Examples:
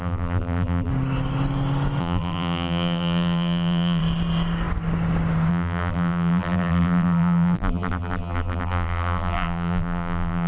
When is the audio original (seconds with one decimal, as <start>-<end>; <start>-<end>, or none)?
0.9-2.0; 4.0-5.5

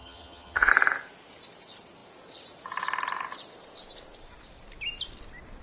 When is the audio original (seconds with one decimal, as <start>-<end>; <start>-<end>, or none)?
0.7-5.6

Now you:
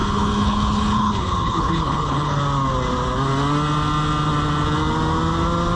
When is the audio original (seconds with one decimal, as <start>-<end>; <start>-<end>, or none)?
2.4-5.8

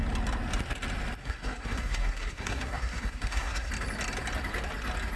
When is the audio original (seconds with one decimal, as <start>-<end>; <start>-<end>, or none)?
0.0-1.2; 3.7-5.2